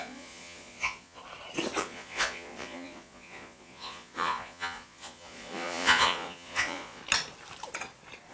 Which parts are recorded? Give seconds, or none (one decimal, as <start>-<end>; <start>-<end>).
1.2-1.8; 7.0-8.3